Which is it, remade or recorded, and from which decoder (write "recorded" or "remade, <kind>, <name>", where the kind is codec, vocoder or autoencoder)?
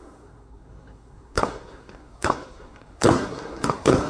remade, codec, SNAC